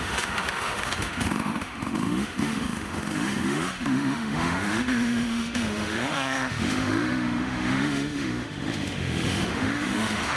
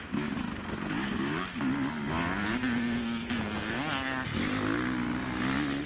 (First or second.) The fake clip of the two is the first